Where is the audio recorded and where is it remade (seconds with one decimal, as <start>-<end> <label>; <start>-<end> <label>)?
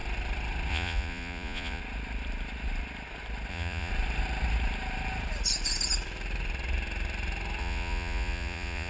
0.0-0.7 recorded; 0.7-1.8 remade; 1.8-3.5 recorded; 3.5-3.9 remade; 3.9-7.6 recorded; 7.6-8.9 remade